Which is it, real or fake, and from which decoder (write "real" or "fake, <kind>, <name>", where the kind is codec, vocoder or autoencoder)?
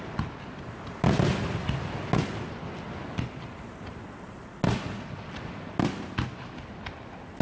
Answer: real